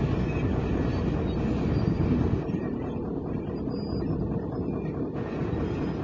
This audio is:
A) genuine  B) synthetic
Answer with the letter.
A